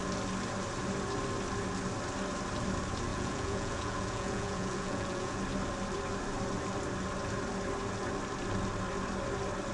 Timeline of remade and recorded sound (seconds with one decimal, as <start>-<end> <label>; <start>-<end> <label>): 0.0-3.1 recorded; 3.1-5.4 remade; 5.4-9.7 recorded